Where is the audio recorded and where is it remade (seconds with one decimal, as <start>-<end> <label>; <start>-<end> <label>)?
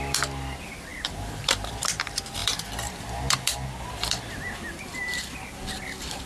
0.0-6.3 remade